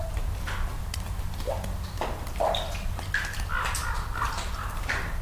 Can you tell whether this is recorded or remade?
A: remade